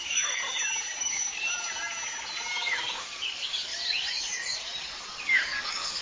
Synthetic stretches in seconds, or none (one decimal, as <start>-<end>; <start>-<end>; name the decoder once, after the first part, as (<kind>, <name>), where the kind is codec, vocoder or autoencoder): 0.0-0.4 (codec, DAC); 1.0-1.5; 2.5-3.7; 5.2-6.0